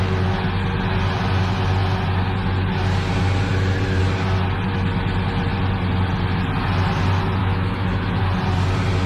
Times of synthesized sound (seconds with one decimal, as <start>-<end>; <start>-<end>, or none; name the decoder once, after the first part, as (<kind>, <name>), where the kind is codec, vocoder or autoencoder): 7.4-8.2 (autoencoder, DAC-VAE)